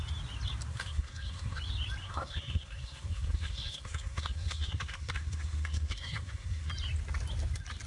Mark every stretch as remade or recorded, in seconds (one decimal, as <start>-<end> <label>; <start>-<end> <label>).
0.0-0.7 recorded; 0.7-1.6 remade; 1.6-2.0 recorded; 2.0-6.7 remade; 6.7-7.9 recorded